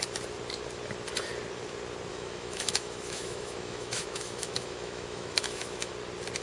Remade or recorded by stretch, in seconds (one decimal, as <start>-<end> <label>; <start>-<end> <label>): 0.0-2.1 recorded; 2.1-5.9 remade; 5.9-6.4 recorded